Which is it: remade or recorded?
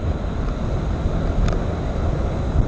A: recorded